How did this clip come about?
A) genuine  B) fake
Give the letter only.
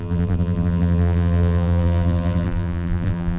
B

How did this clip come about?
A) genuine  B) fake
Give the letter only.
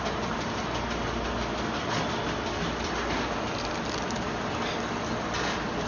A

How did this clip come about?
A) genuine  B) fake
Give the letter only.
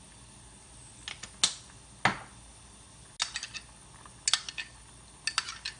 A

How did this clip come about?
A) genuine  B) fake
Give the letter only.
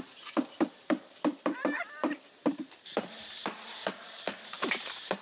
B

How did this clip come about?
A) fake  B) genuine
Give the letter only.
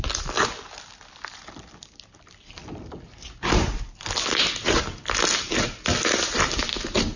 B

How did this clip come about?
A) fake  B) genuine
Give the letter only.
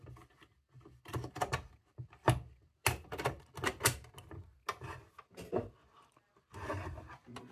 B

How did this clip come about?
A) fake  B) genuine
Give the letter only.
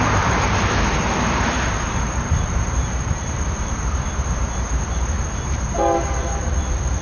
A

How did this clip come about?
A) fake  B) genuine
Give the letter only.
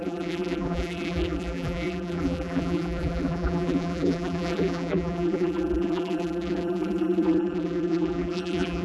A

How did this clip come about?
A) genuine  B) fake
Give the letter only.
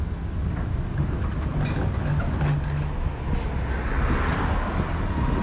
A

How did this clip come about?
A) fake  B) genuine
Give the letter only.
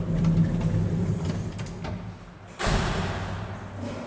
B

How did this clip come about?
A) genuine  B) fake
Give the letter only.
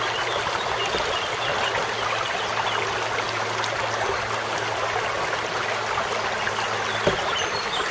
A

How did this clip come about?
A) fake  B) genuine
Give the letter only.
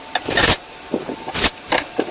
B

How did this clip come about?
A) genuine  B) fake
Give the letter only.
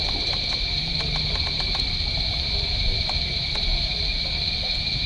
B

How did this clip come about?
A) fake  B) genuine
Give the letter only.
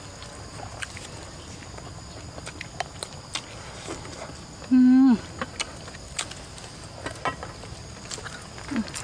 B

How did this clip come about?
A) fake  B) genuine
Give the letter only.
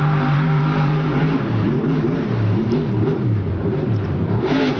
A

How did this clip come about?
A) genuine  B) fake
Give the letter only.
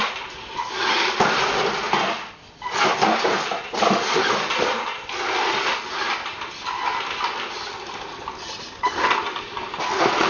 A